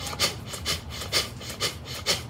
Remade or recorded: remade